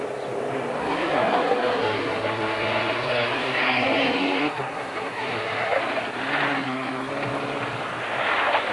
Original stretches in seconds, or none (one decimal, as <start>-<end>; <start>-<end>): 0.0-0.8; 5.8-6.5; 7.1-8.7